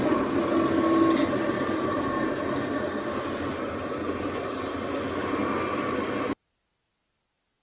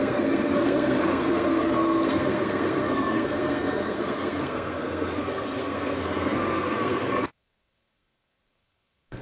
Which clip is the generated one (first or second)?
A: second